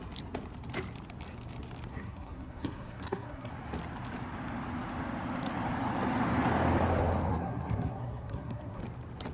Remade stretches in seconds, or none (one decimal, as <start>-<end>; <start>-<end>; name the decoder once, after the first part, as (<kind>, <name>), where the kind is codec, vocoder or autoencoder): 1.9-3.5 (codec, SNAC); 7.3-8.8